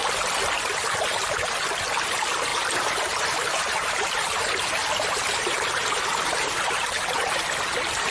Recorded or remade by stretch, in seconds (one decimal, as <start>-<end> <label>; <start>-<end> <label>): 0.0-2.5 recorded; 2.5-7.4 remade; 7.4-8.1 recorded